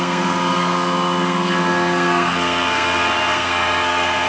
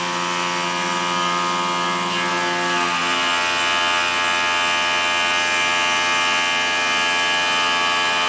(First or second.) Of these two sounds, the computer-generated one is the first